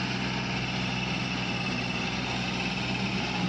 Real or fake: real